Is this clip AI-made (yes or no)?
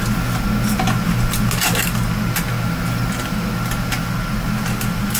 no